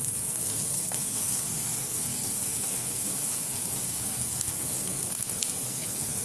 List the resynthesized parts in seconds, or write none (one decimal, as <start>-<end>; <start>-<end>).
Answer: 0.0-6.2